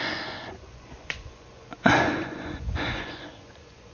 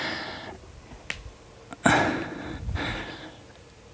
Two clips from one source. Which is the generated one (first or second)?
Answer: first